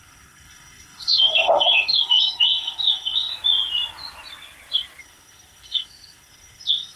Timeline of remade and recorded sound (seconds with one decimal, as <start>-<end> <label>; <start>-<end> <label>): 0.0-3.3 remade; 3.3-5.0 recorded; 5.0-7.0 remade

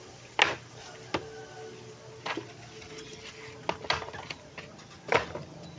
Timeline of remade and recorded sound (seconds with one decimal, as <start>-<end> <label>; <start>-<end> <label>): 0.0-5.8 recorded

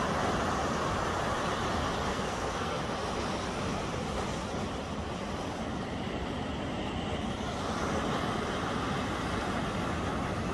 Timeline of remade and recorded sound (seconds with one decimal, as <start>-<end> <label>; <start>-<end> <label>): 0.0-2.1 recorded; 2.1-2.8 remade; 2.8-10.5 recorded

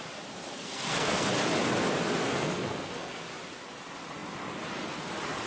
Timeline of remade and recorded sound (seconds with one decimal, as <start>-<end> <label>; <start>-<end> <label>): 0.0-0.5 recorded; 0.5-1.3 remade; 1.3-2.2 recorded; 2.2-3.2 remade; 3.2-5.5 recorded

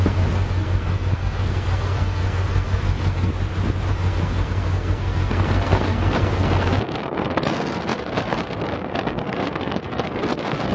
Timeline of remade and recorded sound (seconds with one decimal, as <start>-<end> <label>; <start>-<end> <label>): 0.0-3.3 remade; 3.3-3.9 recorded; 3.9-10.7 remade

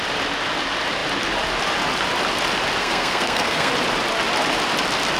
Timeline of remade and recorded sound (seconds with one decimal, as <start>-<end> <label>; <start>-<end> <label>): 0.0-2.8 recorded; 2.8-3.7 remade; 3.7-5.2 recorded

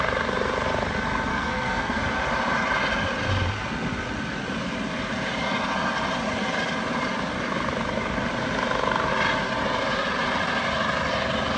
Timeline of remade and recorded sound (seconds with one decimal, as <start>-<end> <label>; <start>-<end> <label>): 0.0-1.3 recorded; 1.3-2.0 remade; 2.0-11.6 recorded